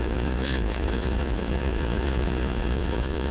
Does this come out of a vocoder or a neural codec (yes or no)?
yes